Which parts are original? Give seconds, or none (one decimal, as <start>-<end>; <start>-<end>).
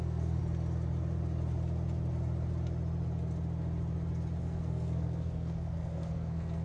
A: 0.4-4.4